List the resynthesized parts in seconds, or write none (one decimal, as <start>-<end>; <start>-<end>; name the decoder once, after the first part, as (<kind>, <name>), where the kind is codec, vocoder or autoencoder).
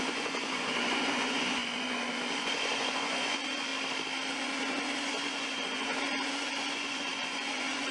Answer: 0.0-3.7 (vocoder, Vocos); 4.3-7.9